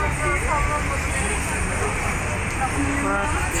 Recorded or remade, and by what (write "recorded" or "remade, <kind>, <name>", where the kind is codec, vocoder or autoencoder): recorded